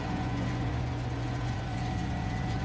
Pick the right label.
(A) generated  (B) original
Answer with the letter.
A